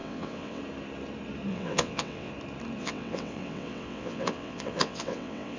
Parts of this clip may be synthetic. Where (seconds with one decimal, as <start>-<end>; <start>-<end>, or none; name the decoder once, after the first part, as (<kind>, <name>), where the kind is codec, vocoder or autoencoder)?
0.0-0.6 (vocoder, WaveNeXt); 1.5-2.3; 2.8-5.6